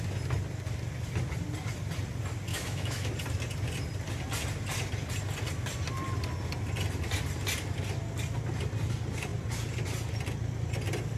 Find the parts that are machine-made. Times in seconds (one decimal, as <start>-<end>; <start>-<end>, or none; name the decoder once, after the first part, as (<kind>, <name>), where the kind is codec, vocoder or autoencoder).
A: 2.5-3.1 (autoencoder, DAC-VAE)